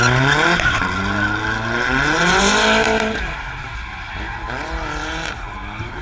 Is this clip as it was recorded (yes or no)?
yes